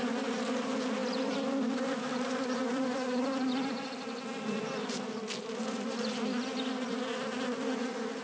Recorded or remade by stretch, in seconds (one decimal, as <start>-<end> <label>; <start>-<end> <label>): 0.0-1.0 recorded; 1.0-3.7 remade; 3.7-8.2 recorded